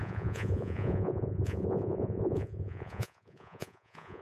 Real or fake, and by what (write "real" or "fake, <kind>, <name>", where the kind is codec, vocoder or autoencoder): fake, vocoder, Vocos